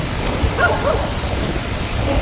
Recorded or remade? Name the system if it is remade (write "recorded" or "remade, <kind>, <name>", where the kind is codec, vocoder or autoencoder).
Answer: recorded